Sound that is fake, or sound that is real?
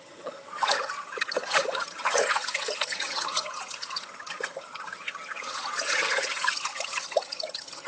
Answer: fake